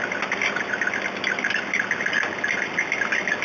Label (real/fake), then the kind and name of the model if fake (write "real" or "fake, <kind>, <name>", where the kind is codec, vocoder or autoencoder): real